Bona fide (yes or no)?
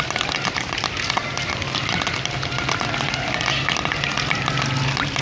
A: yes